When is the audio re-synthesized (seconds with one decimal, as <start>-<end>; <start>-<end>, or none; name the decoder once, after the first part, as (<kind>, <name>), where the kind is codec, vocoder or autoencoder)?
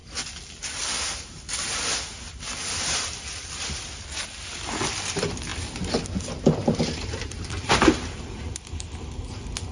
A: 6.6-8.4 (vocoder, BigVGAN v2)